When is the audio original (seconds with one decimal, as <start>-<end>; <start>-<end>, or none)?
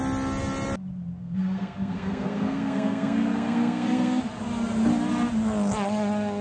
0.0-1.2; 4.2-6.4